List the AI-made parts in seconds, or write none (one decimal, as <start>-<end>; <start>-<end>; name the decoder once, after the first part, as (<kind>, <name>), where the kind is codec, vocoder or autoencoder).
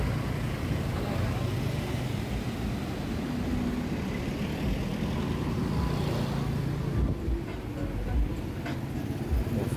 none